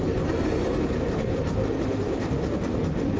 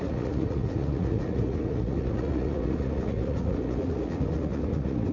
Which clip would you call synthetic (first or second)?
second